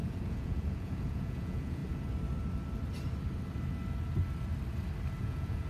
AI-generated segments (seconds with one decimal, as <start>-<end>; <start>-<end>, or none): 0.0-1.8; 5.2-5.7